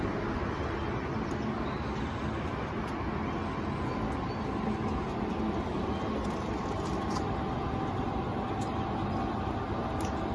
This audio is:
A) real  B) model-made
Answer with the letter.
A